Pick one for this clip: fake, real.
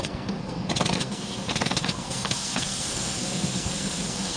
fake